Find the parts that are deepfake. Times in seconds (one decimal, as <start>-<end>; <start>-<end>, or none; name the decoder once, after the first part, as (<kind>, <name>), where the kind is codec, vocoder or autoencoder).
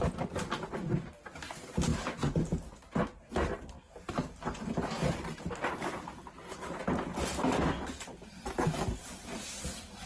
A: none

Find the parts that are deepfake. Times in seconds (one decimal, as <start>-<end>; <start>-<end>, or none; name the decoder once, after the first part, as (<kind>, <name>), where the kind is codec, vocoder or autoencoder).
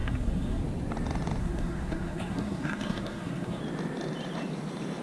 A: 0.0-0.6 (codec, SNAC); 1.4-3.6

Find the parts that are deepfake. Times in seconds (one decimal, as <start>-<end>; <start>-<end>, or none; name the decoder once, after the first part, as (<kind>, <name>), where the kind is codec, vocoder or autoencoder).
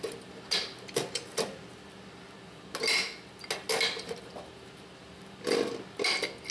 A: none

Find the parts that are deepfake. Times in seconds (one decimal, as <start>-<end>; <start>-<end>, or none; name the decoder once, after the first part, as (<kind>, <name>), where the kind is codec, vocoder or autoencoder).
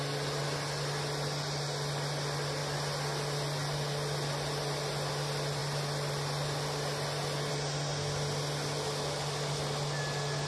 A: none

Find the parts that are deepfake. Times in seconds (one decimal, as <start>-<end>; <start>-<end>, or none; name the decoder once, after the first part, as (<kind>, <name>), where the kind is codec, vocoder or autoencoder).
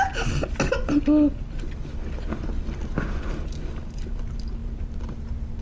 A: none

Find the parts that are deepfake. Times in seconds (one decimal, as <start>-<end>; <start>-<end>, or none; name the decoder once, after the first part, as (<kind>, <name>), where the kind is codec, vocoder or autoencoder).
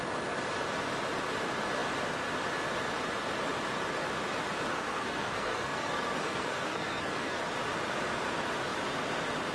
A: 4.7-7.4 (codec, SNAC)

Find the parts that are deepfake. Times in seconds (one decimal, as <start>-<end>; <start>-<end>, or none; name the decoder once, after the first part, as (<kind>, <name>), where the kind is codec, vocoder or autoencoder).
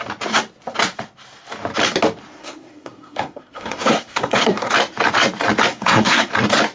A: 2.4-4.7 (codec, SNAC); 5.7-6.3